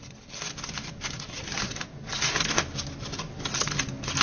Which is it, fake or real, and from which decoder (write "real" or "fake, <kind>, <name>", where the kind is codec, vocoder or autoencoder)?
real